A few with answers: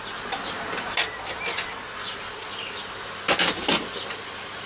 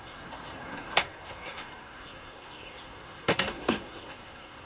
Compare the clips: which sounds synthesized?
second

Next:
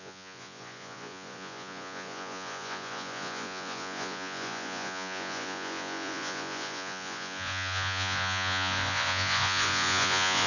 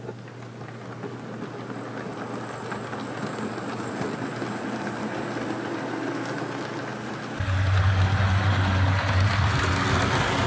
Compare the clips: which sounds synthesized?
first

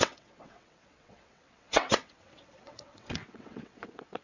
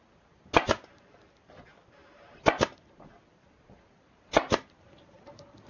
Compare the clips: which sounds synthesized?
first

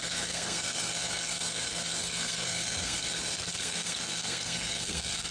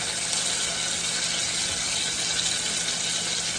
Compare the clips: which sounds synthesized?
first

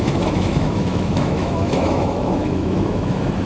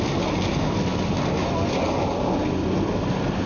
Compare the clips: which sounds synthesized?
first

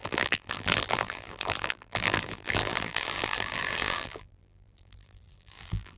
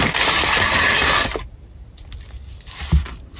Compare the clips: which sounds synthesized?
first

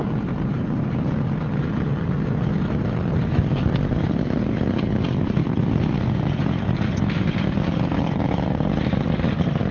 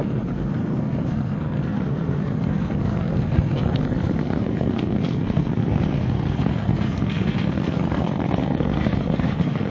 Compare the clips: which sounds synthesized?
second